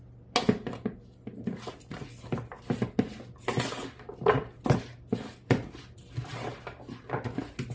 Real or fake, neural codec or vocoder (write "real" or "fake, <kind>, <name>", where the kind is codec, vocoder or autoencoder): real